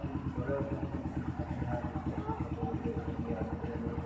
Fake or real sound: real